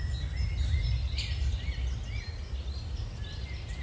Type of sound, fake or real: real